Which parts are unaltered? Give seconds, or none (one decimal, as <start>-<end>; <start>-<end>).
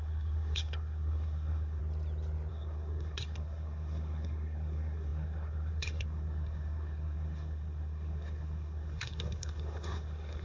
1.8-2.5